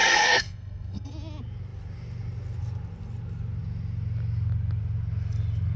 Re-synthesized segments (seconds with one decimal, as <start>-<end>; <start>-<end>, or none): 0.0-1.1